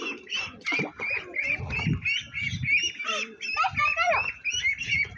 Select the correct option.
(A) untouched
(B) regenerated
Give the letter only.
A